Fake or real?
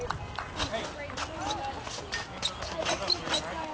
real